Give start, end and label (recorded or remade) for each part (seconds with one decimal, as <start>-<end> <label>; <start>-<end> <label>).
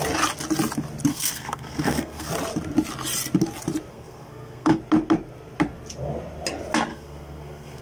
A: 0.0-1.1 recorded; 1.1-2.3 remade; 2.3-3.9 recorded; 3.9-4.8 remade; 4.8-6.9 recorded; 6.9-7.8 remade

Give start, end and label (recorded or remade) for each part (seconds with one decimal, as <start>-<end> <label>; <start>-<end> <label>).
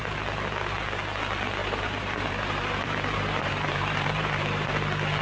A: 0.0-1.6 recorded; 1.6-4.7 remade; 4.7-5.2 recorded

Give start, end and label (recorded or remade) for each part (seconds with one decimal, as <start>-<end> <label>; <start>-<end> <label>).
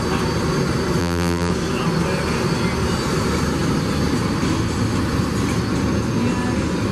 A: 0.0-1.0 recorded; 1.0-1.5 remade; 1.5-6.9 recorded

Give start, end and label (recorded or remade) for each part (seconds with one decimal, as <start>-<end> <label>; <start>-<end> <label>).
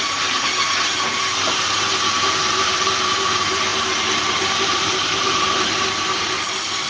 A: 0.0-6.9 remade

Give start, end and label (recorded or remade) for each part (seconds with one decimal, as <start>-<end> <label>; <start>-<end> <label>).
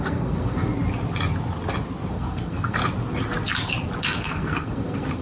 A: 0.0-0.7 remade; 0.7-2.1 recorded; 2.1-2.8 remade; 2.8-4.0 recorded; 4.0-5.2 remade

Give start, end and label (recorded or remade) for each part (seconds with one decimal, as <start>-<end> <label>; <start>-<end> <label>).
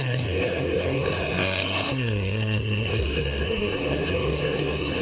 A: 0.0-5.0 remade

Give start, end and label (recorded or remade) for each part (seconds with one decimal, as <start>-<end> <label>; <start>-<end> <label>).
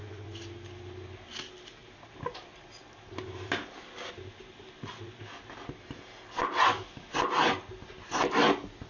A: 0.0-8.9 recorded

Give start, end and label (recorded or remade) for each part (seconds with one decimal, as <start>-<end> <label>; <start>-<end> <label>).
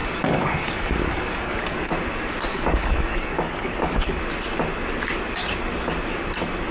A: 0.0-1.9 remade; 1.9-2.5 recorded; 2.5-4.2 remade; 4.2-6.7 recorded